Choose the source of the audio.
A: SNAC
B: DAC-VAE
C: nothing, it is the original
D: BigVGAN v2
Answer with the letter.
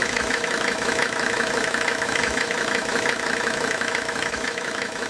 B